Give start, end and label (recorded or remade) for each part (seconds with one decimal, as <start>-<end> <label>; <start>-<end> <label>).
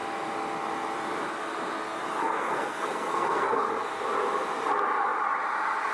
0.0-2.2 recorded; 2.2-3.7 remade; 3.7-5.9 recorded